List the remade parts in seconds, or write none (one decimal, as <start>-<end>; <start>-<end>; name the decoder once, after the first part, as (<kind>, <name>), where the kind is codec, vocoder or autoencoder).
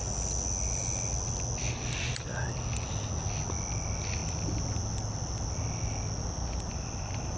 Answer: none